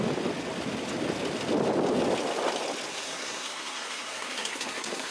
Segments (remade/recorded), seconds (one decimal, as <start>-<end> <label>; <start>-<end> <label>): 0.0-2.9 recorded; 2.9-5.1 remade